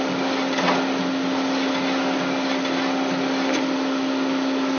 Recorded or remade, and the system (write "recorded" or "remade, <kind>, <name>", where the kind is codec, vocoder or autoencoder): recorded